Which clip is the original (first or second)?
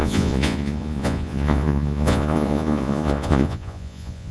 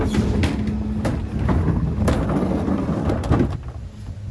second